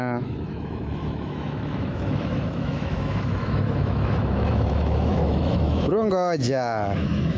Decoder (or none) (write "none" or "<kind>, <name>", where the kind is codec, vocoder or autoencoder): autoencoder, DAC-VAE